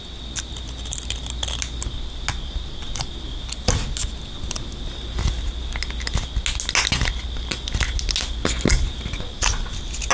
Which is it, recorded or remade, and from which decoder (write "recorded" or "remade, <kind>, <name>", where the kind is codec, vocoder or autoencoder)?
recorded